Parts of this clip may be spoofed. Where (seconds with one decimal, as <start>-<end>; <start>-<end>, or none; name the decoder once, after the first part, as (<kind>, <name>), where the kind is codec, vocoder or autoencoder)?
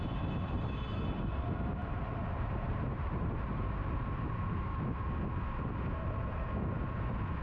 1.8-4.7 (vocoder, BigVGAN v2)